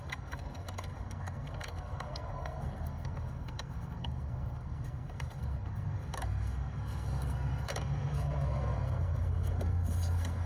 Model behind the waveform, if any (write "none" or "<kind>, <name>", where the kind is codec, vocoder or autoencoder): codec, SNAC